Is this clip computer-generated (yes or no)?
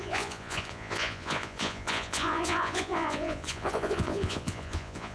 yes